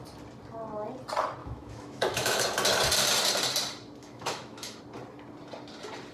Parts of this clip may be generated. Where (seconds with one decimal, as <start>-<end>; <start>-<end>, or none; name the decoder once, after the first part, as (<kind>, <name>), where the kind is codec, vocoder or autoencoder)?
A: 1.4-2.4 (autoencoder, DAC-VAE); 4.0-4.8